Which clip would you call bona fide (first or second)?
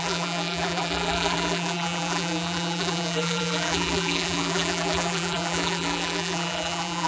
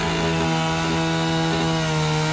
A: second